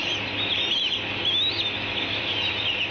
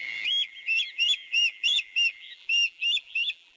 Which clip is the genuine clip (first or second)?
first